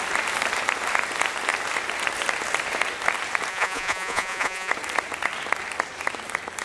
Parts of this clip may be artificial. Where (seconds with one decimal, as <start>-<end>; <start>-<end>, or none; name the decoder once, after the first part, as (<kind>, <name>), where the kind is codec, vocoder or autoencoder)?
3.5-4.7 (vocoder, Vocos)